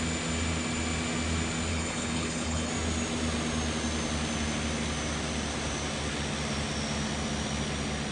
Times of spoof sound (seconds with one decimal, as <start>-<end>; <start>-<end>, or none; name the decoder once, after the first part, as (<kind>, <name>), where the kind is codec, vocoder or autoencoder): 1.7-2.7 (codec, HILCodec)